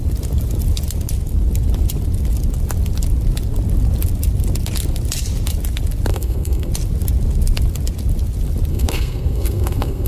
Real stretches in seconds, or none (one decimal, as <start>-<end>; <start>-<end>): 0.0-6.1; 6.7-8.7